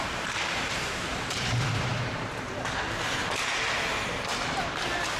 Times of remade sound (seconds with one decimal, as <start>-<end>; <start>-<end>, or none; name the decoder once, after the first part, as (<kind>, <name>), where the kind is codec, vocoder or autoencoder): 0.0-5.2 (vocoder, BigVGAN v2)